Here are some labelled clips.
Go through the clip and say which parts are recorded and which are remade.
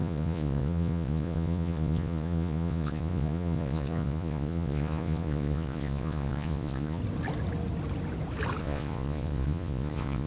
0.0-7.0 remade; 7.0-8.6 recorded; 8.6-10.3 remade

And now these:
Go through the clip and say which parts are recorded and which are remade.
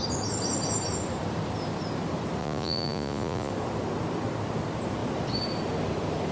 0.0-2.4 recorded; 2.4-3.5 remade; 3.5-6.3 recorded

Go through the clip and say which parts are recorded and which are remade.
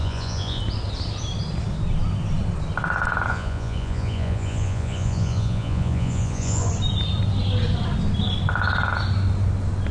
0.0-0.6 remade; 0.6-3.3 recorded; 3.3-6.7 remade; 6.7-9.9 recorded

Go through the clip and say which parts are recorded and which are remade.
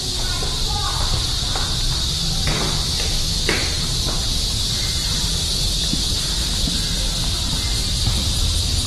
0.0-3.9 recorded; 3.9-4.7 remade; 4.7-8.9 recorded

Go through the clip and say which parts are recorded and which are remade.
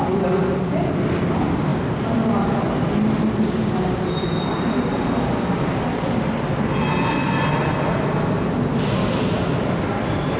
0.0-10.4 recorded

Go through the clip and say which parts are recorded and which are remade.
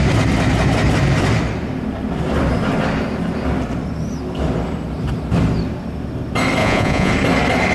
0.0-6.6 recorded; 6.6-7.1 remade; 7.1-7.7 recorded